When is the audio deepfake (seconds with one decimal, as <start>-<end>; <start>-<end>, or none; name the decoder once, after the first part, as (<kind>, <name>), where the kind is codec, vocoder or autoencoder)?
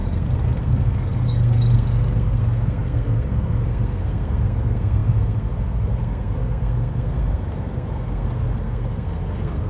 0.0-9.7 (codec, SNAC)